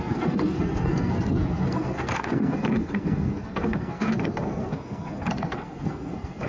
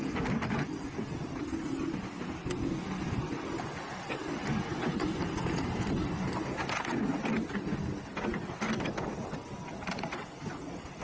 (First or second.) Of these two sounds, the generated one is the first